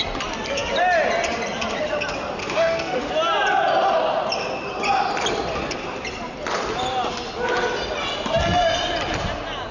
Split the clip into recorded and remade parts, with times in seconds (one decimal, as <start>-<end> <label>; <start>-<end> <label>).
0.0-2.4 recorded; 2.4-3.1 remade; 3.1-9.7 recorded